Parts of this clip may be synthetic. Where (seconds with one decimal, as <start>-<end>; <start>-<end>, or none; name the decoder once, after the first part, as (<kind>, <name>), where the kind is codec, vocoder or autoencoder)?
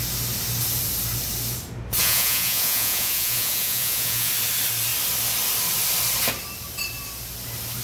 2.0-4.3 (vocoder, Vocos)